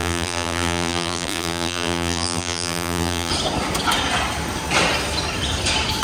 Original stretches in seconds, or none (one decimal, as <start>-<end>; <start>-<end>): 3.3-6.0